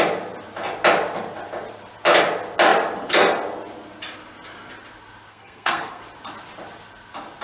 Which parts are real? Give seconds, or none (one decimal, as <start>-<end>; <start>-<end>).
0.0-5.3; 6.0-7.4